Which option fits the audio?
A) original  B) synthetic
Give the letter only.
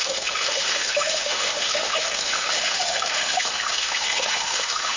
B